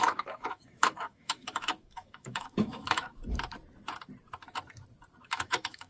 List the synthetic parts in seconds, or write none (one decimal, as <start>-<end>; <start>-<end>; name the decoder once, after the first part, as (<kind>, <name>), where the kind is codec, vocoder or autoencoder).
0.0-3.2 (autoencoder, DAC-VAE); 5.2-5.9